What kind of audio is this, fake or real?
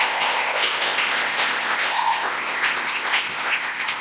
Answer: fake